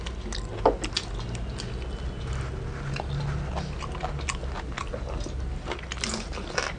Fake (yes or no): no